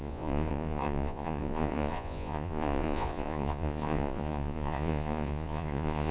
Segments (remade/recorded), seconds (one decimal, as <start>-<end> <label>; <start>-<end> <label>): 0.0-6.1 remade